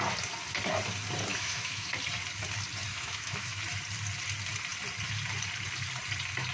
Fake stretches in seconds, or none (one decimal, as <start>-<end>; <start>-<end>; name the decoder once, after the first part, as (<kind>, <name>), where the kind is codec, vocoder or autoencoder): 1.3-1.9 (autoencoder, DAC-VAE); 2.9-3.6